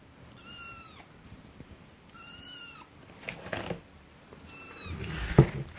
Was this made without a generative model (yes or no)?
yes